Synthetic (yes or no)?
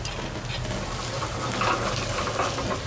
no